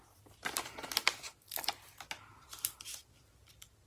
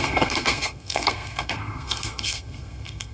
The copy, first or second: second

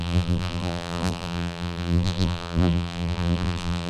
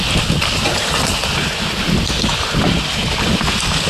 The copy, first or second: first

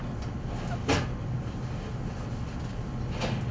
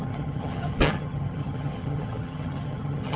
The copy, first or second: second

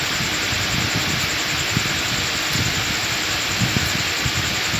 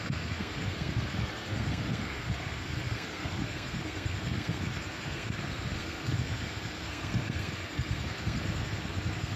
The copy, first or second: second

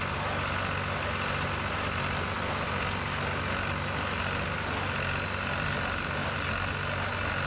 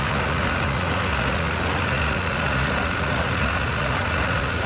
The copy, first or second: second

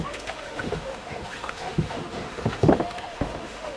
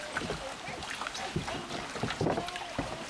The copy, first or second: first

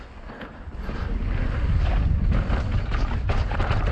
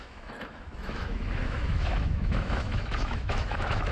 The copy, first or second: second